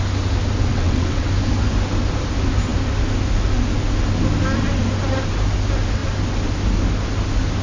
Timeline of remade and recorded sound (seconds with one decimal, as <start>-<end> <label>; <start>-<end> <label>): 0.0-0.7 recorded; 0.7-1.3 remade; 1.3-7.6 recorded